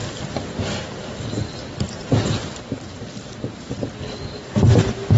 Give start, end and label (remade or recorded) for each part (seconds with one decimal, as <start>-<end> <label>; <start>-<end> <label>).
0.0-3.1 remade; 3.1-5.2 recorded